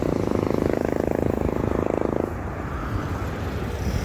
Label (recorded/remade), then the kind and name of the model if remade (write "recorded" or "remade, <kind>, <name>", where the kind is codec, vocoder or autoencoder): recorded